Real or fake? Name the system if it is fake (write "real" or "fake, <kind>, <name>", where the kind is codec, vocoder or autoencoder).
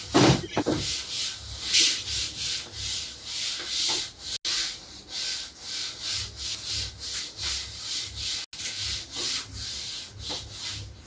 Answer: real